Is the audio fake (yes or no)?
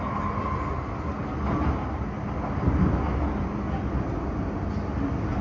no